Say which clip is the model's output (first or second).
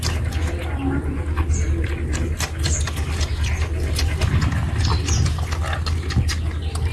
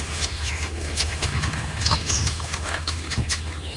second